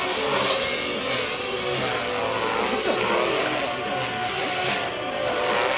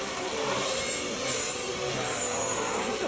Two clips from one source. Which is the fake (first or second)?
second